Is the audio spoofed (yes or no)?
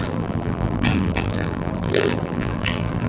yes